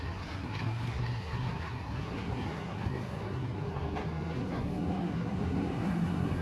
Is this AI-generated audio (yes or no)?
yes